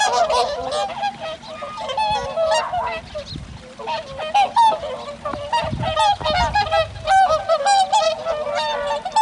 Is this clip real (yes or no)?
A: yes